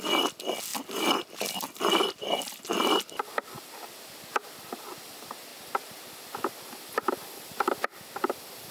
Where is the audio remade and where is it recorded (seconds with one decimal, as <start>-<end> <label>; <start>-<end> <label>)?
0.0-8.7 recorded